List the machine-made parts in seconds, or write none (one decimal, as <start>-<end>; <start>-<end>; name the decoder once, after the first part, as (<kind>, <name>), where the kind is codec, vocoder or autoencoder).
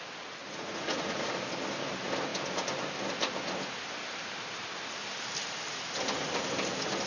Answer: 0.4-1.3 (vocoder, Vocos)